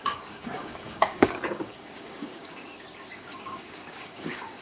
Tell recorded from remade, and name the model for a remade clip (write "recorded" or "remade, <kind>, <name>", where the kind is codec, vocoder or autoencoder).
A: remade, codec, DAC